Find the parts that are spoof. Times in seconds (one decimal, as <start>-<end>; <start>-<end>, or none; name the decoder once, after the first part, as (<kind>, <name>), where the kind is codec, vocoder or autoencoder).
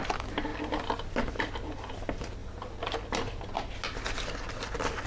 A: none